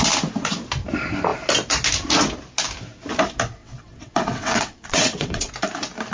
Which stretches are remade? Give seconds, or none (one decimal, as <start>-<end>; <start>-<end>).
3.6-5.5